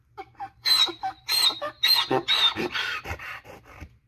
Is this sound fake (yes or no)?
yes